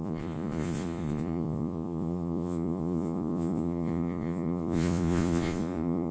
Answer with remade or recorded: remade